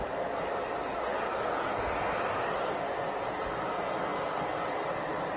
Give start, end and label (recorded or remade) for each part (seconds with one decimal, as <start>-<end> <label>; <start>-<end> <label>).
0.0-5.4 recorded

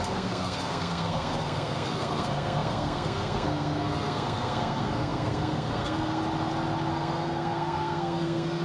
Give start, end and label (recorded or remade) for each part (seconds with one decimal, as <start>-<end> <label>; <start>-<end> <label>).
0.0-6.2 remade; 6.2-6.9 recorded; 6.9-8.6 remade

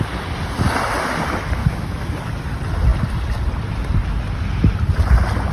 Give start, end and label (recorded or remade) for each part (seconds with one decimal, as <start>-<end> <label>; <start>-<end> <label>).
0.0-1.6 recorded; 1.6-2.2 remade; 2.2-5.5 recorded

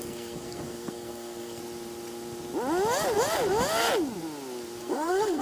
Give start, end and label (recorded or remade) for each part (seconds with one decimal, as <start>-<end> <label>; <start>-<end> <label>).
0.0-1.6 remade; 1.6-4.8 recorded; 4.8-5.4 remade

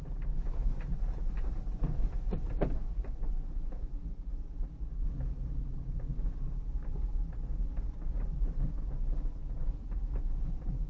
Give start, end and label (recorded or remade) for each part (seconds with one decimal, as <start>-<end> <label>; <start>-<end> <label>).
0.0-2.8 recorded; 2.8-4.6 remade; 4.6-10.9 recorded

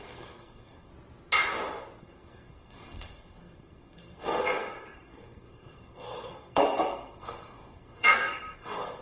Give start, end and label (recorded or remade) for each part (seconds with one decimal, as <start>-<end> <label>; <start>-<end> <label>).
0.0-0.9 remade; 0.9-2.0 recorded; 2.0-9.0 remade

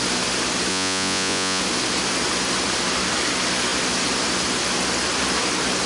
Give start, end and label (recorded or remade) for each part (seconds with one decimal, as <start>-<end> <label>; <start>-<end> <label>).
0.0-0.7 recorded; 0.7-1.6 remade; 1.6-5.9 recorded

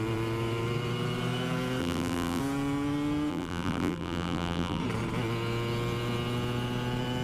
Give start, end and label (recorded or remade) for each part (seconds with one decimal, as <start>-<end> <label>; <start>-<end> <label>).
0.0-1.8 recorded; 1.8-2.4 remade; 2.4-3.3 recorded; 3.3-4.8 remade; 4.8-7.2 recorded